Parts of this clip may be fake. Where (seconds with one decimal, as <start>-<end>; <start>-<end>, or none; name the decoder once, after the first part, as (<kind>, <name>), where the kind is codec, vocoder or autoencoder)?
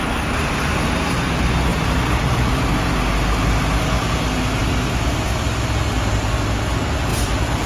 1.7-2.6 (vocoder, BigVGAN v2); 7.1-7.7